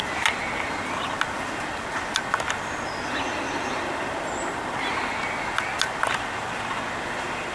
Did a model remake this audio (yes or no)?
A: no